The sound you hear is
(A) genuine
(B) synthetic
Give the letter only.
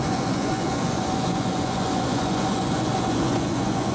B